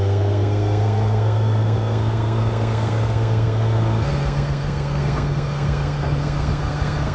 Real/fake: fake